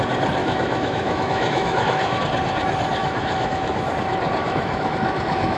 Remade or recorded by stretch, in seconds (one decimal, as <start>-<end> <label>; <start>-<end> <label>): 0.0-0.4 recorded; 0.4-2.2 remade; 2.2-3.0 recorded; 3.0-3.9 remade; 3.9-4.4 recorded; 4.4-5.6 remade